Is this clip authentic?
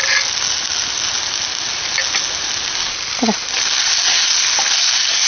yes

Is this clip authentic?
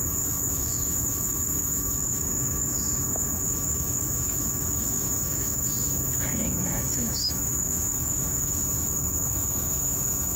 no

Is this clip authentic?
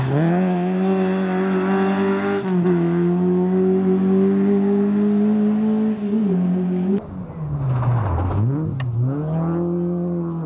yes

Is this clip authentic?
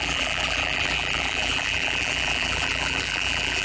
no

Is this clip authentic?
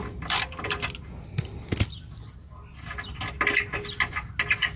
yes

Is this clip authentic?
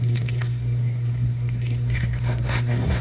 no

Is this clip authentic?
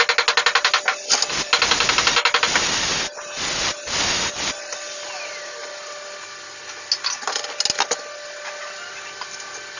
yes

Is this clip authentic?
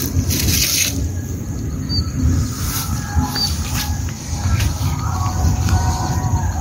yes